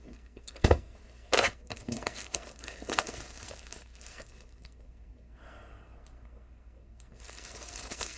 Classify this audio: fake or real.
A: fake